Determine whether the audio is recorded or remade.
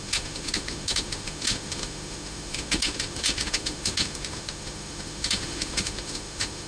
remade